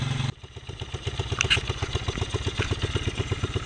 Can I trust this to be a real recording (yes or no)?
yes